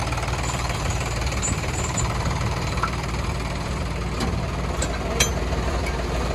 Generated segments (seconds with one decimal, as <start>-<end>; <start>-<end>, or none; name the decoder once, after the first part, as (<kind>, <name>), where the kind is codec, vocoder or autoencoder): 0.0-3.8 (vocoder, BigVGAN v2)